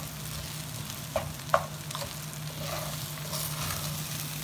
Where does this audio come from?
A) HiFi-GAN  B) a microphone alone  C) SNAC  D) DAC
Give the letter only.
B